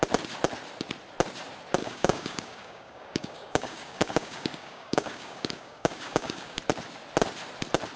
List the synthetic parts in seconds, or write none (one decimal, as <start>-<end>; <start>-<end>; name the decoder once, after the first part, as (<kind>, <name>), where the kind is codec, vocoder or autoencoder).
1.8-6.6 (codec, DAC)